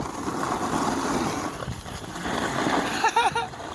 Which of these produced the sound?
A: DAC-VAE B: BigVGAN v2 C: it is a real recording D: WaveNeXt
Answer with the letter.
C